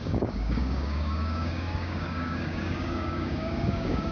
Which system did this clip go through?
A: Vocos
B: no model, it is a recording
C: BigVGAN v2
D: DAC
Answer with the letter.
D